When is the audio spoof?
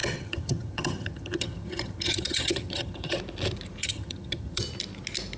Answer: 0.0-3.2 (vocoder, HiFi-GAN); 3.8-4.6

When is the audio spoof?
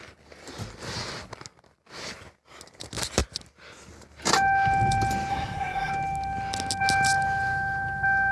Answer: 5.3-5.9 (codec, SNAC)